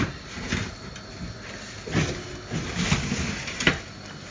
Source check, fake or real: real